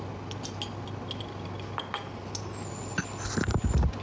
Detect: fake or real real